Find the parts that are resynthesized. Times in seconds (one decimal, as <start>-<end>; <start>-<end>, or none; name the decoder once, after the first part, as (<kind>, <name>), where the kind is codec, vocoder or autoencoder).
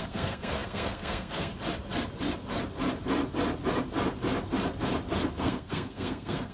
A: 0.0-1.5 (codec, SNAC); 5.4-6.5